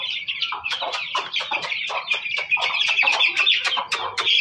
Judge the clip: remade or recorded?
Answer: remade